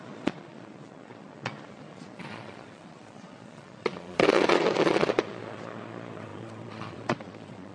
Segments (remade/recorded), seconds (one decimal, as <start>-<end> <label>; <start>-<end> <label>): 0.0-7.7 remade